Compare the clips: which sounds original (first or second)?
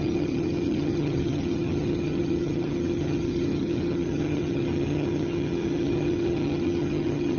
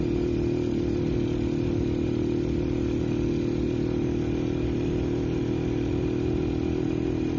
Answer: second